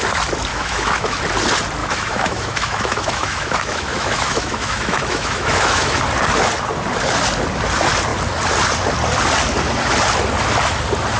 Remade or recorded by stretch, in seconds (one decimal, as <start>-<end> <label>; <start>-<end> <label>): 0.0-0.5 recorded; 0.5-1.2 remade; 1.2-1.8 recorded; 1.8-6.0 remade; 6.0-11.2 recorded